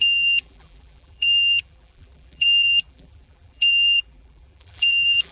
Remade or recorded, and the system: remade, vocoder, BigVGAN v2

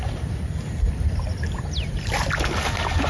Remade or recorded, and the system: recorded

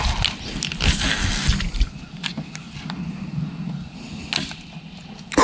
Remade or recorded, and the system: recorded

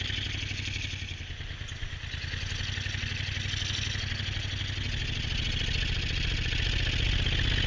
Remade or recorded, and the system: recorded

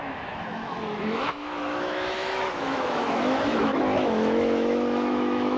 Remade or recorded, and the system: remade, autoencoder, DAC-VAE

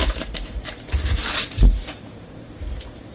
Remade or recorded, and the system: remade, vocoder, BigVGAN v2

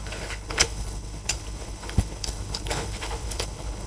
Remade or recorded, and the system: remade, codec, HILCodec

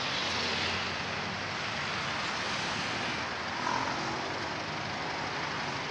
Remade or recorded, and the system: recorded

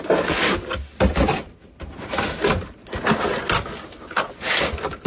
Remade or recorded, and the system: recorded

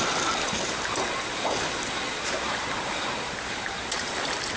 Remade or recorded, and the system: recorded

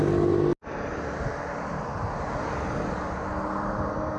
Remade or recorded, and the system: recorded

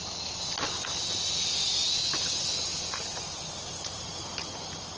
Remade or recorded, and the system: recorded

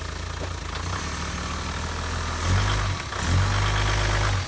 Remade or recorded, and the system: recorded